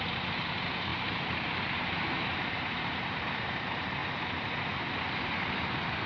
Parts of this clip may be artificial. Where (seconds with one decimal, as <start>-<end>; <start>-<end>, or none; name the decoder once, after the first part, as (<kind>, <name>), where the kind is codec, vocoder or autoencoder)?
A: 0.0-4.0 (vocoder, BigVGAN v2); 5.2-6.1

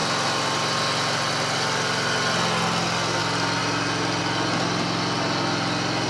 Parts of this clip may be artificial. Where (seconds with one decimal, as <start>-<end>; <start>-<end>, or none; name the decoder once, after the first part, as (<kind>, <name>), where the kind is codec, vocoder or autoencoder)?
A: none

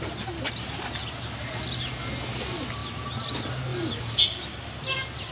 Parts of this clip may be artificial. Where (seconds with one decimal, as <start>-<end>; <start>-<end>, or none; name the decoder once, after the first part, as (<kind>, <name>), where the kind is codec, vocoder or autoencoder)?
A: none